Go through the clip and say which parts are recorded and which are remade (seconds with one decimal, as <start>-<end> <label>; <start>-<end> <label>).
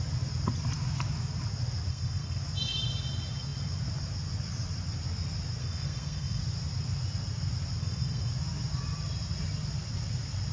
0.0-1.9 recorded; 1.9-2.4 remade; 2.4-5.6 recorded; 5.6-6.4 remade; 6.4-7.8 recorded; 7.8-8.3 remade; 8.3-10.5 recorded